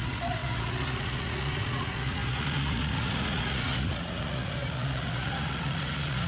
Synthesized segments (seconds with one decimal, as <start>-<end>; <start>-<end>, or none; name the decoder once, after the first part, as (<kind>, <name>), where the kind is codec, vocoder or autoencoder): 0.0-6.3 (vocoder, Vocos)